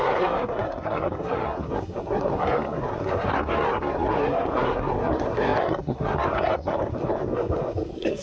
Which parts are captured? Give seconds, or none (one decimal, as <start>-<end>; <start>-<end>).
none